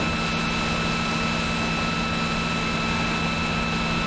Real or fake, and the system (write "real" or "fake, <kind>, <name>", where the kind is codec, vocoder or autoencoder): real